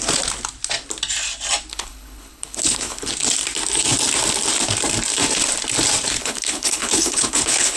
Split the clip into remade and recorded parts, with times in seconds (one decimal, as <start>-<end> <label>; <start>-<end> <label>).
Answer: 0.0-1.7 recorded; 1.7-3.1 remade; 3.1-6.2 recorded; 6.2-7.8 remade

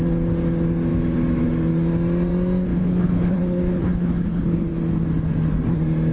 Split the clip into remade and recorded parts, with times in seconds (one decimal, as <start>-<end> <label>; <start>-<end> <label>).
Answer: 0.0-2.7 recorded; 2.7-4.7 remade; 4.7-6.1 recorded

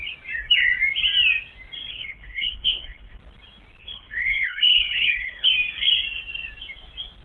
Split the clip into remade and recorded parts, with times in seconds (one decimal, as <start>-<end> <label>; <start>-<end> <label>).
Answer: 0.0-1.9 recorded; 1.9-3.2 remade; 3.2-3.8 recorded; 3.8-5.5 remade; 5.5-7.2 recorded

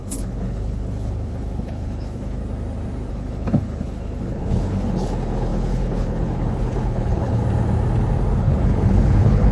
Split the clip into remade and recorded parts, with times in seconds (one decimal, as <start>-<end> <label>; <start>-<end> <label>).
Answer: 0.0-2.4 remade; 2.4-3.1 recorded; 3.1-7.4 remade; 7.4-8.4 recorded; 8.4-9.5 remade

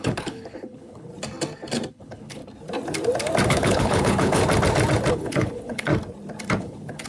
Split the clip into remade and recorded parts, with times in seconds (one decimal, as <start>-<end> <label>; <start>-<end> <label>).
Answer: 0.0-1.1 remade; 1.1-1.9 recorded; 1.9-2.4 remade; 2.4-3.5 recorded; 3.5-4.4 remade; 4.4-5.1 recorded; 5.1-5.9 remade; 5.9-6.6 recorded; 6.6-7.1 remade